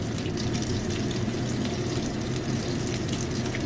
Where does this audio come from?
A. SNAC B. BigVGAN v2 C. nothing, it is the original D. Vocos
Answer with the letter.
C